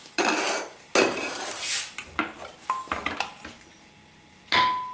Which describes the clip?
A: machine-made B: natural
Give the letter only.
B